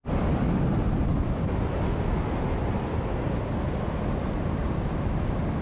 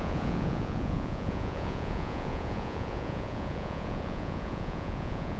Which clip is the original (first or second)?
first